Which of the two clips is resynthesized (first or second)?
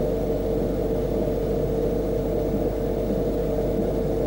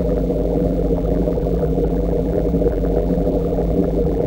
second